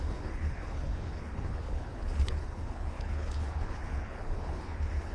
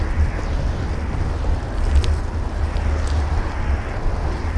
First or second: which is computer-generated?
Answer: first